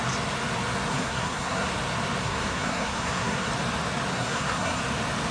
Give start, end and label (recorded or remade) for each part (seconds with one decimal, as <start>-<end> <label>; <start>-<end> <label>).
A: 0.0-0.9 recorded; 0.9-1.7 remade; 1.7-2.2 recorded; 2.2-3.5 remade; 3.5-4.1 recorded; 4.1-4.8 remade; 4.8-5.3 recorded